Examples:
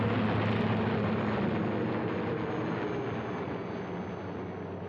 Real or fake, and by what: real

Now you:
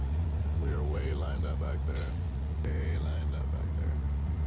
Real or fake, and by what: fake, vocoder, Vocos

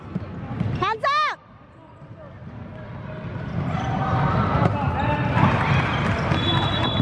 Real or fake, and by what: real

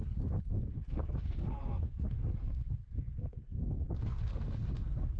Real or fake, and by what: fake, codec, SNAC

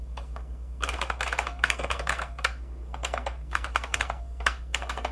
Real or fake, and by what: fake, codec, SNAC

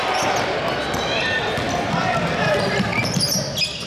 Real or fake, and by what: real